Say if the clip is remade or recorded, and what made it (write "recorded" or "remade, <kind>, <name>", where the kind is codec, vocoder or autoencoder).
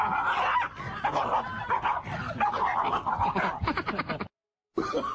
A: recorded